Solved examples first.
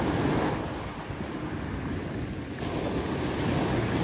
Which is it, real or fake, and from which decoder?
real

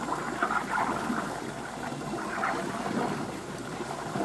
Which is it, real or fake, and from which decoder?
real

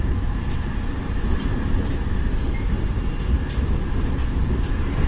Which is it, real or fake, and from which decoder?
real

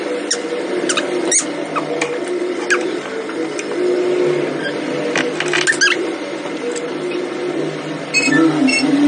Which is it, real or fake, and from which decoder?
real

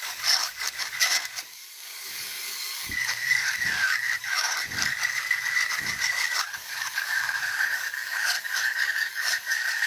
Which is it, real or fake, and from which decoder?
fake, codec, DAC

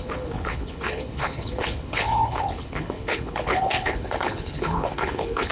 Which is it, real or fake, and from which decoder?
fake, codec, HILCodec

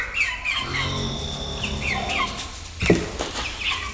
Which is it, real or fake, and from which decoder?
real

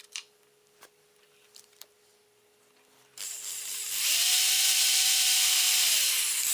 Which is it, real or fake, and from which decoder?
fake, vocoder, BigVGAN v2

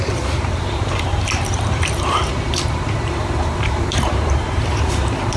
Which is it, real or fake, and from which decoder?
fake, vocoder, BigVGAN v2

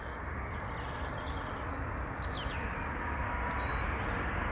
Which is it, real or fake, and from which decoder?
real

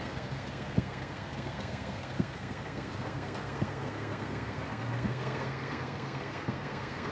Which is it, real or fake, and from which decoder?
fake, codec, SNAC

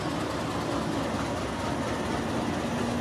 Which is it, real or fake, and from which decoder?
real